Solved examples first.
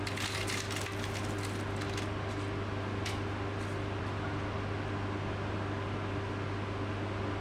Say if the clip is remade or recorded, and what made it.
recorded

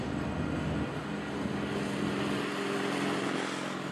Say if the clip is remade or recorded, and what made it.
recorded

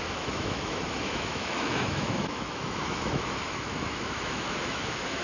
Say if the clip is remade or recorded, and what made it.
remade, autoencoder, DAC-VAE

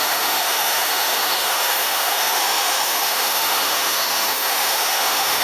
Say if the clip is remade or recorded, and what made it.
remade, autoencoder, DAC-VAE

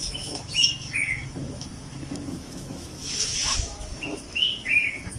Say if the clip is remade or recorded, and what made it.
remade, autoencoder, DAC-VAE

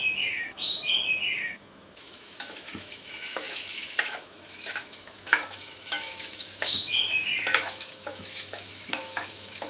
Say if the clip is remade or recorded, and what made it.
remade, autoencoder, DAC-VAE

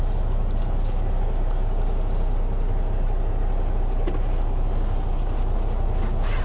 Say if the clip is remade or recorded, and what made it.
recorded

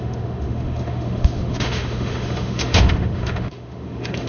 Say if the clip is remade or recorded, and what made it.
remade, autoencoder, DAC-VAE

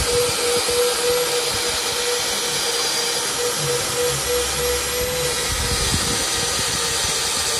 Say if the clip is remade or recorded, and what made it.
recorded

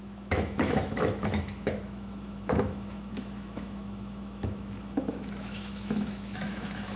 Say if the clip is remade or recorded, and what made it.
remade, autoencoder, DAC-VAE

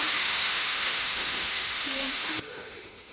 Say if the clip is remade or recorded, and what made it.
remade, autoencoder, DAC-VAE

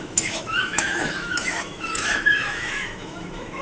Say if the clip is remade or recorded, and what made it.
remade, autoencoder, DAC-VAE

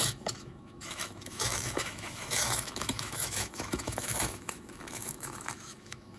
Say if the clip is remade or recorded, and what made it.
remade, autoencoder, DAC-VAE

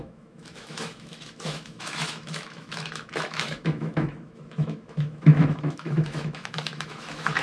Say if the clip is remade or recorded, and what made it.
remade, autoencoder, DAC-VAE